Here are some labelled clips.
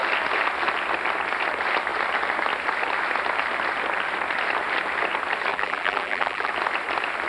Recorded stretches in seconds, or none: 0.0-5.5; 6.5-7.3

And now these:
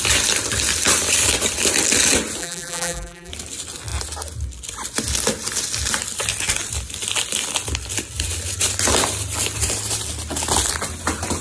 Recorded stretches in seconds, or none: 0.0-2.4; 3.3-11.4

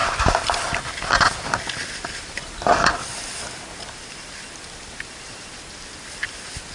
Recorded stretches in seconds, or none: 0.0-6.7

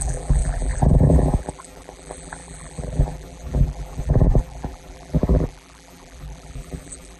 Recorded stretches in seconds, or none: none

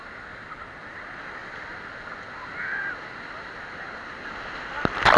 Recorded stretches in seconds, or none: 0.0-5.2

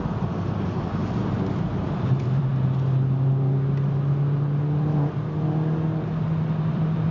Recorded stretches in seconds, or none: 2.5-6.6